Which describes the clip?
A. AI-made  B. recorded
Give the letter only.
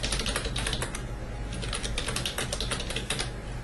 B